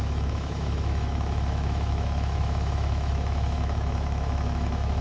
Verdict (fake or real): fake